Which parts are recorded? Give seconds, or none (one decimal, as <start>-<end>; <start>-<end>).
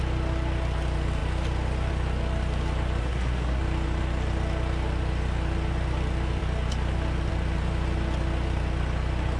0.0-3.0; 3.6-9.4